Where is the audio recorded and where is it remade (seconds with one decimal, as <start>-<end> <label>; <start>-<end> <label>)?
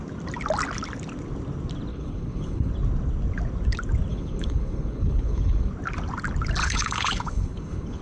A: 0.0-1.9 recorded; 1.9-2.7 remade; 2.7-4.1 recorded; 4.1-5.7 remade; 5.7-6.6 recorded; 6.6-8.0 remade